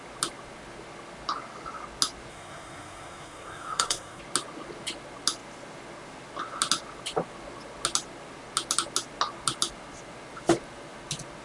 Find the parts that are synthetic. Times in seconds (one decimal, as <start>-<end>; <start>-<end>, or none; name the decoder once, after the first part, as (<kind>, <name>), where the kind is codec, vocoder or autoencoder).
2.3-4.2 (codec, SNAC)